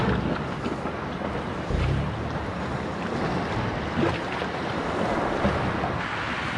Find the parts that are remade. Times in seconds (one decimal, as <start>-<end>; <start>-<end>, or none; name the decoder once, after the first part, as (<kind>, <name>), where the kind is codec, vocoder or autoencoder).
none